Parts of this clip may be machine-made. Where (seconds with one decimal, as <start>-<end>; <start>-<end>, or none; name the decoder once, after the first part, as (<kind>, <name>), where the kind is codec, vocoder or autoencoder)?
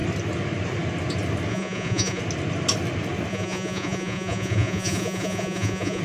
1.5-2.2 (vocoder, Vocos); 3.3-6.0